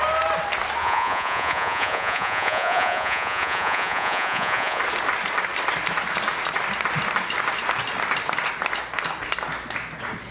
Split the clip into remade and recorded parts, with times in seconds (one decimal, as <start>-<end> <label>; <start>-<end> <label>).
0.0-0.8 recorded; 0.8-4.8 remade; 4.8-10.3 recorded